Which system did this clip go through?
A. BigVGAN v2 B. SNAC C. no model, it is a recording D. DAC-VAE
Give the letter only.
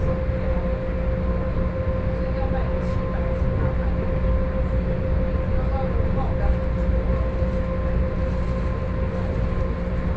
C